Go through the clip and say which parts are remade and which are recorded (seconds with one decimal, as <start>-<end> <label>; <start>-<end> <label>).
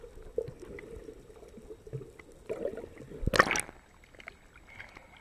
0.0-5.2 recorded